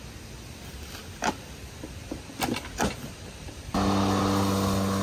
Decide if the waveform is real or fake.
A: real